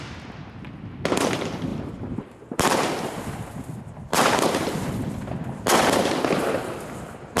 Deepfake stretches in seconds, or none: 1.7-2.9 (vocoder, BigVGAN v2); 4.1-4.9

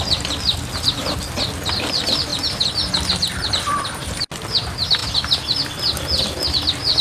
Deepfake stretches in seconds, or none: none

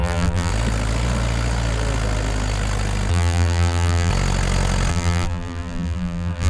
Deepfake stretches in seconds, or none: 0.0-0.5 (vocoder, BigVGAN v2); 3.1-4.1; 4.9-6.5

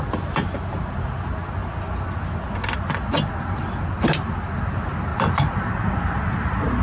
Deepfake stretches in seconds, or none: 5.1-5.7 (vocoder, BigVGAN v2)